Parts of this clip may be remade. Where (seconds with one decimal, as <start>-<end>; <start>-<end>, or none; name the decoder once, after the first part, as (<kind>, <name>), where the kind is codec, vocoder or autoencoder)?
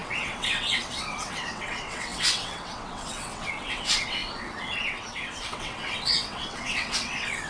0.0-7.5 (vocoder, WaveNeXt)